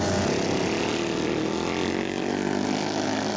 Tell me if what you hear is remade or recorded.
recorded